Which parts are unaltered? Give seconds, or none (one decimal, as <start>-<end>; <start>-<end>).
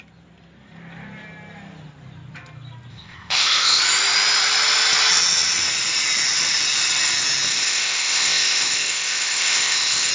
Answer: 0.0-2.9; 3.8-7.5